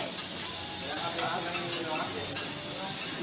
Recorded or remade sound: recorded